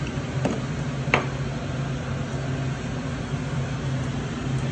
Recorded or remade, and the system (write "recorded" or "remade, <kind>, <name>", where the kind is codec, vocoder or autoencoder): recorded